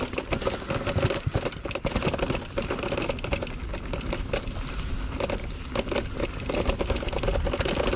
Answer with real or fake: real